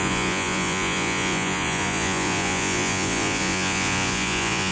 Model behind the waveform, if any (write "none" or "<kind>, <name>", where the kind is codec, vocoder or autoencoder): vocoder, Vocos